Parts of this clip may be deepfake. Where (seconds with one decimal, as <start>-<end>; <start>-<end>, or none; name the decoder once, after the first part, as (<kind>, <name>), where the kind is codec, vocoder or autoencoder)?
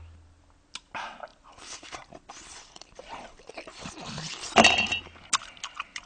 1.3-5.0 (vocoder, BigVGAN v2)